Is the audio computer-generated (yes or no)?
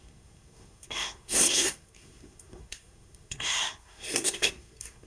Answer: yes